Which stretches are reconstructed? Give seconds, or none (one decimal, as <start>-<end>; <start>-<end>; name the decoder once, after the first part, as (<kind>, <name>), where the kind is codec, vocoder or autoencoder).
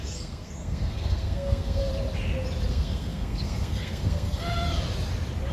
0.0-1.9 (codec, SNAC); 2.7-4.6